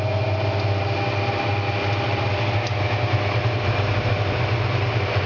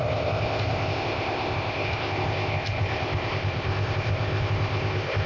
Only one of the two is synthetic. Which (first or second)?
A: second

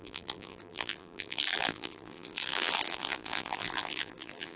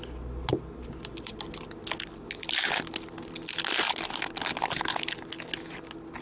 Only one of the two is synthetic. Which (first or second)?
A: first